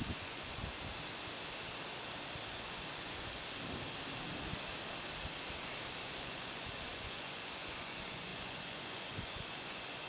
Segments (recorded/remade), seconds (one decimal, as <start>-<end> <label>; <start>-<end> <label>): 0.0-0.6 remade; 0.6-2.5 recorded; 2.5-3.4 remade; 3.4-6.0 recorded; 6.0-10.1 remade